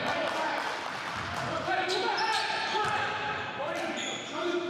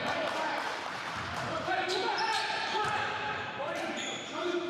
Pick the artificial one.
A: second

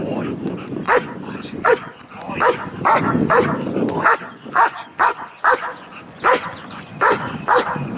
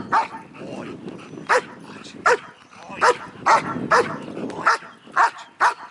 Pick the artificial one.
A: first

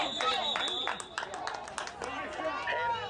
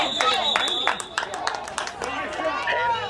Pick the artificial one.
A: second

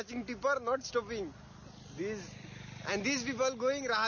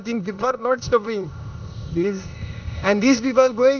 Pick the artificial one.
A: second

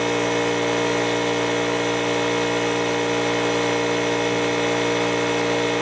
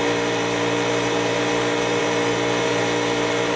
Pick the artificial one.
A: second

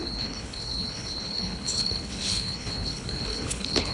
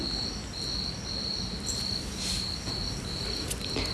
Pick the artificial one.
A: first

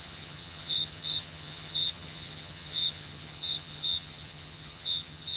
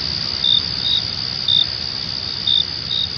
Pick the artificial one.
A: first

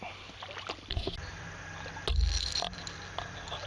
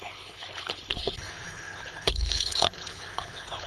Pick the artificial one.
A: second